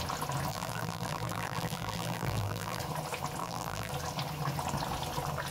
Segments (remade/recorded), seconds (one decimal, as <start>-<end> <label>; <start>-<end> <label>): 0.0-0.5 recorded; 0.5-2.8 remade; 2.8-3.4 recorded; 3.4-3.9 remade; 3.9-5.5 recorded